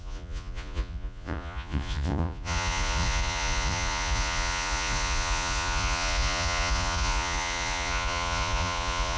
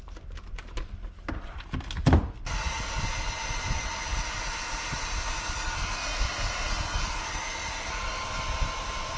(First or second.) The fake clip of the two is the first